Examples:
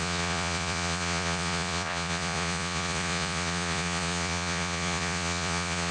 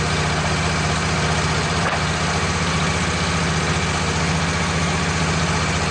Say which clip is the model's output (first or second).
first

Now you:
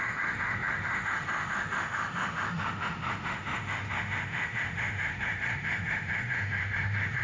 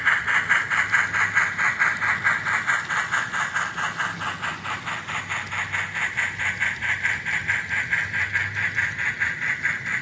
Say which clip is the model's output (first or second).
first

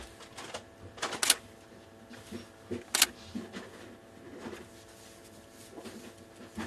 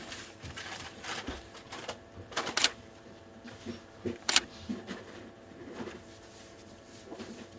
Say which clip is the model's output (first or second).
second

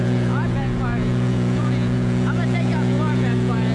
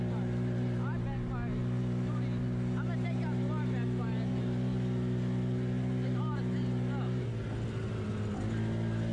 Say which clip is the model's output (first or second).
first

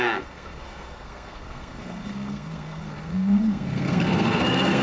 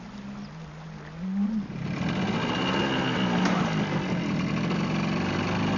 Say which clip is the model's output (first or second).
first